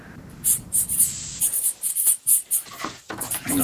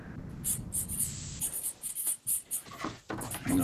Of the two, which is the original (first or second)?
second